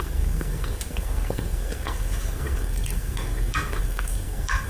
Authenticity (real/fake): fake